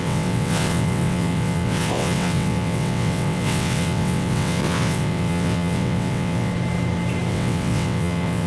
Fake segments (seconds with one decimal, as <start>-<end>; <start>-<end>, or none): 0.0-6.5; 7.3-8.5